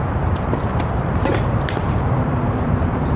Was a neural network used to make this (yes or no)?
yes